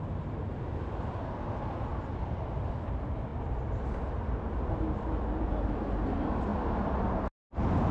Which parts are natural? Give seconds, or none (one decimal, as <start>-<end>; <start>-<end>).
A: 0.0-3.3; 4.7-7.9

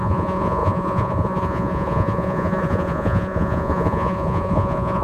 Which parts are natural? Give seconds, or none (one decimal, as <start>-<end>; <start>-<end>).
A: none

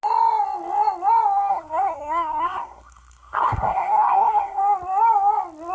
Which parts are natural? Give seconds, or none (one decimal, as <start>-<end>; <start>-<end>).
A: 0.0-1.5; 4.6-5.7

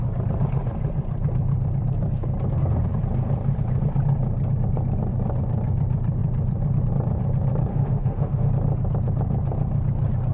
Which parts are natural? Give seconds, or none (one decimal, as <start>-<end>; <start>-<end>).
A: 0.0-7.7; 8.5-10.3

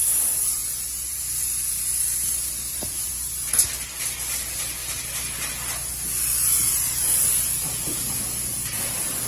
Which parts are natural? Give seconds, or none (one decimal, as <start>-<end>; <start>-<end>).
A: 0.0-9.3

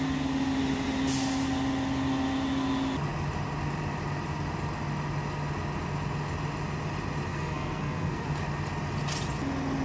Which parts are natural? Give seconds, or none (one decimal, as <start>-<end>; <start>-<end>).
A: 0.0-7.3; 8.3-9.8

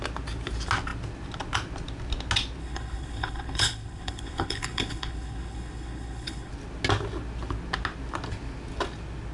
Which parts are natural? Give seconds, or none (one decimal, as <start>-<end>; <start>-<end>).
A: 0.0-2.6; 6.5-9.3